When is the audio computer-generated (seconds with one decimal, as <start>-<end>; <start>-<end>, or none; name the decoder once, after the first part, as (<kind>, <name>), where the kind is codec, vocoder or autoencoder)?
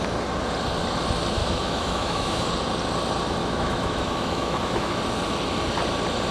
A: 1.4-2.5 (autoencoder, DAC-VAE); 3.4-5.0